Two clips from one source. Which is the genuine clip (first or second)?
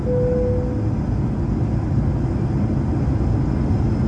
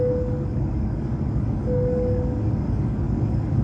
first